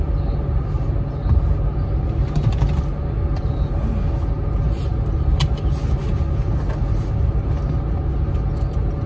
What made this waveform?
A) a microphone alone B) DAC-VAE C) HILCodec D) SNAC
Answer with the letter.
A